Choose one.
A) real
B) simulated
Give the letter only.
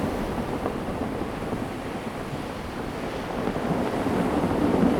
A